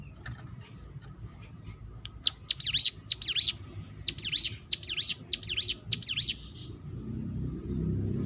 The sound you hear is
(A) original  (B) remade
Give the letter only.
A